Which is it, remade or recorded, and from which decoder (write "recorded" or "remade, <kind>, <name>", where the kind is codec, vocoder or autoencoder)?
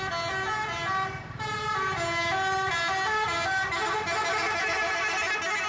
recorded